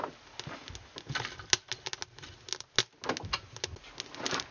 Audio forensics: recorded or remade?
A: recorded